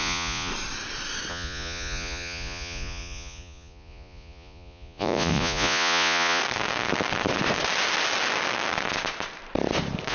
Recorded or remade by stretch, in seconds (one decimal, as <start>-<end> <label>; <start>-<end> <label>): 0.0-0.5 remade; 0.5-1.3 recorded; 1.3-6.4 remade; 6.4-10.1 recorded

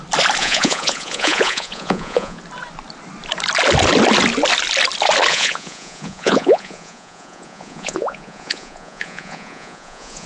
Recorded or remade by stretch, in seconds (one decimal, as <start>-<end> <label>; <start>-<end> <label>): 0.0-0.4 recorded; 0.4-2.4 remade; 2.4-5.3 recorded; 5.3-10.3 remade

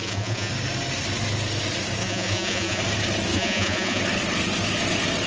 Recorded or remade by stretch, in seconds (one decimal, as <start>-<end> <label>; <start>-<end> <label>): 0.0-0.5 remade; 0.5-2.0 recorded; 2.0-2.8 remade; 2.8-3.3 recorded; 3.3-4.0 remade; 4.0-5.3 recorded

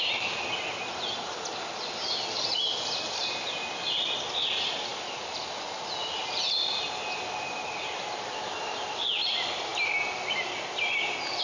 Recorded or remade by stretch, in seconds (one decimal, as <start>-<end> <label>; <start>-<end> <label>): 0.0-11.4 recorded

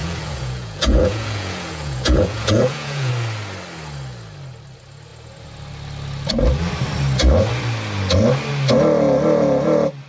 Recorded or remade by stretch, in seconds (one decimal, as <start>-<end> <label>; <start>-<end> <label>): 0.0-3.1 remade; 3.1-10.1 recorded

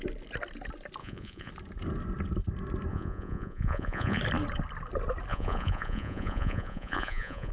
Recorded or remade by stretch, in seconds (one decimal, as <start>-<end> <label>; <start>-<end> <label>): 0.0-1.0 recorded; 1.0-1.5 remade; 1.5-2.9 recorded; 2.9-4.2 remade; 4.2-5.3 recorded; 5.3-7.5 remade